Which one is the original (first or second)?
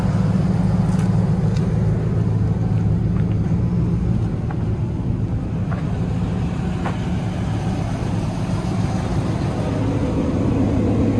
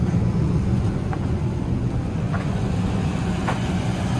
first